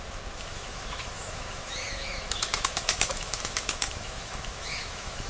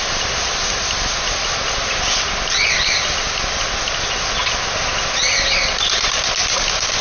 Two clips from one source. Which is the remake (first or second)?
first